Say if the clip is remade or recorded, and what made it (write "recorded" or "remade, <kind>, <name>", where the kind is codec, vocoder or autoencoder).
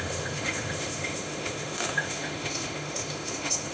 remade, autoencoder, DAC-VAE